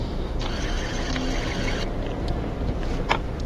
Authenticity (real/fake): real